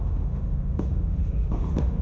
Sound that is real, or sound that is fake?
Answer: fake